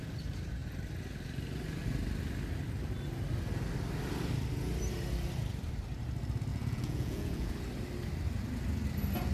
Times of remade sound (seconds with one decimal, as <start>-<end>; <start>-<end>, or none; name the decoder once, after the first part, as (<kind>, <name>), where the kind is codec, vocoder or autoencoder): 6.5-7.5 (vocoder, Vocos)